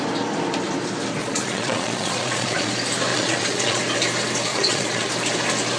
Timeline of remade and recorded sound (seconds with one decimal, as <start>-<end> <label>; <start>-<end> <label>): 0.0-1.2 recorded; 1.2-2.7 remade; 2.7-3.1 recorded; 3.1-3.8 remade; 3.8-4.5 recorded; 4.5-5.1 remade; 5.1-5.8 recorded